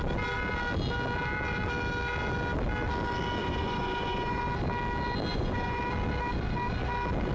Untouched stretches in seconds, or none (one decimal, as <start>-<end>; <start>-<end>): 0.0-3.4; 4.4-5.3; 5.8-7.3